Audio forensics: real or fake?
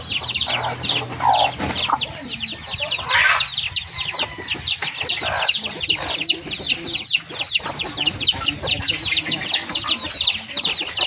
real